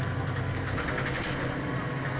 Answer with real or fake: real